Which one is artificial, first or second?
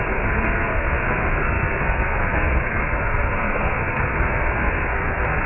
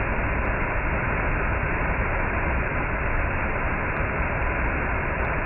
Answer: first